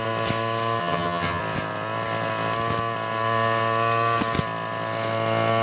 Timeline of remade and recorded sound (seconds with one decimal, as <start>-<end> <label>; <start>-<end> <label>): 0.0-0.8 recorded; 0.8-1.4 remade; 1.4-5.6 recorded